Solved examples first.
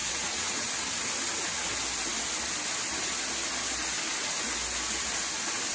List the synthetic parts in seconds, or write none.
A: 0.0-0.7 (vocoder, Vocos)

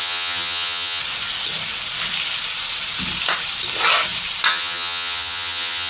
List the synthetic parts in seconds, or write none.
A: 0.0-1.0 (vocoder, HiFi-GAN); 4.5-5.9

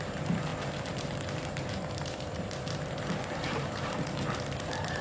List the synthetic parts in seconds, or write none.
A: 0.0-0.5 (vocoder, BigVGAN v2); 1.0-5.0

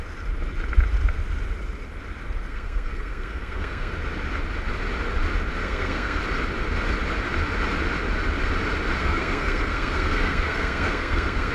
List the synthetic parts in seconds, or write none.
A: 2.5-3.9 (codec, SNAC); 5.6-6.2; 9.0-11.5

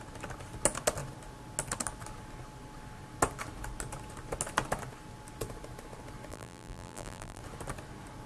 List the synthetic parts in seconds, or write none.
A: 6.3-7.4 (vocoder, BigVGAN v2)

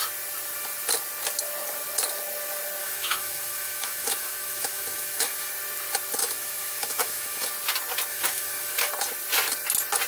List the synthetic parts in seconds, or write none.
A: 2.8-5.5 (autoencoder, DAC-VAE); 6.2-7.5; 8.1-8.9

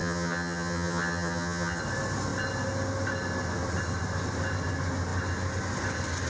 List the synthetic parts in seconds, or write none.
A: 0.0-1.8 (vocoder, HiFi-GAN)

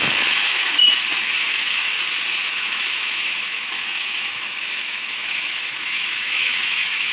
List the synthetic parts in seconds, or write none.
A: 0.0-0.8 (autoencoder, DAC-VAE); 1.4-1.9; 2.5-7.1